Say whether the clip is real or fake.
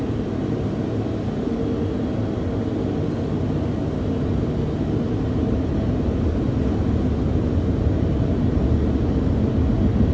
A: real